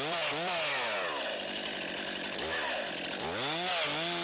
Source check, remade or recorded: recorded